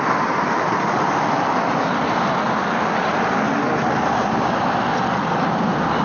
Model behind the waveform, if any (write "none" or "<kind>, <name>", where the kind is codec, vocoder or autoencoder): none